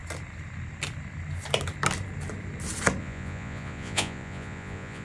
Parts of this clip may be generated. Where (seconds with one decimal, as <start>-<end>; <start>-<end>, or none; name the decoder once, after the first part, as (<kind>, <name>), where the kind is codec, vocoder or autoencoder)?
3.0-5.0 (vocoder, Vocos)